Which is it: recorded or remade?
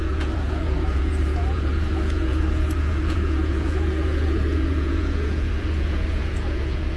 remade